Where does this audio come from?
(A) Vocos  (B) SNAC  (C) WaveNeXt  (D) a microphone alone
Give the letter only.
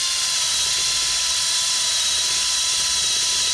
D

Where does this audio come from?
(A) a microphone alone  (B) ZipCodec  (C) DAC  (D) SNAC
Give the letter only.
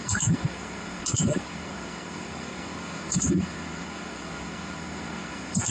D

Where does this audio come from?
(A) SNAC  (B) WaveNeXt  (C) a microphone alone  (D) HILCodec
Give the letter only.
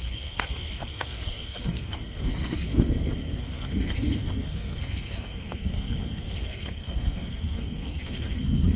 A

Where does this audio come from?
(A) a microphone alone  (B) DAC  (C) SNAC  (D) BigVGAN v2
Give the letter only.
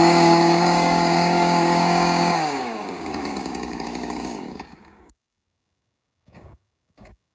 B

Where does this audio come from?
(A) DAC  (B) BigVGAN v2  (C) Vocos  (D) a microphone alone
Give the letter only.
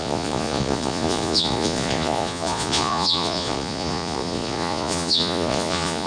C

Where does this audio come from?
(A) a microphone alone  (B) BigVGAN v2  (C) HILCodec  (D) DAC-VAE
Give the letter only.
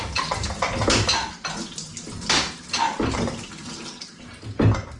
A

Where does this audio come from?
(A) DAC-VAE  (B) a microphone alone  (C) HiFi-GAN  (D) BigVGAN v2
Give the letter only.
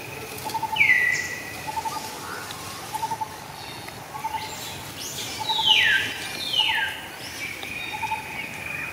B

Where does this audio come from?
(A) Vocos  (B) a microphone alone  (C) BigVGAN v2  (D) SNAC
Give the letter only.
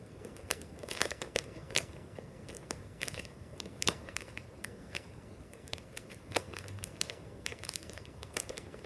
D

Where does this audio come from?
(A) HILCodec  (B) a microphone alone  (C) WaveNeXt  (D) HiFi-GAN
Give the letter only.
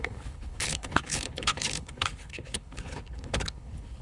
A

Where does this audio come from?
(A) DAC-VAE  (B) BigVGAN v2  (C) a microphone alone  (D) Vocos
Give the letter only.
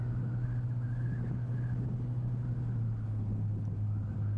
C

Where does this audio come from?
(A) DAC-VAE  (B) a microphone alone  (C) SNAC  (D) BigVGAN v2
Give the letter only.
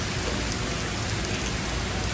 B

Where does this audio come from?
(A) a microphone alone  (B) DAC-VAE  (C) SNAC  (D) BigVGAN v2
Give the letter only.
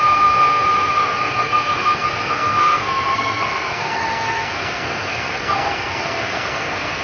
C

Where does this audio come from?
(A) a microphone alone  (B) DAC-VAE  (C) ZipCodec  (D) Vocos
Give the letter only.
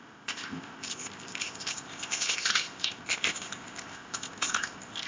C